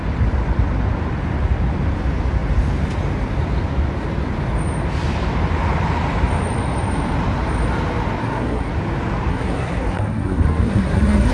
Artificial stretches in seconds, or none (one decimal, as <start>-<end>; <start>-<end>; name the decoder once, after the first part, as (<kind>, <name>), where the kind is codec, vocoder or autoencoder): 8.2-8.7 (codec, SNAC); 9.3-11.3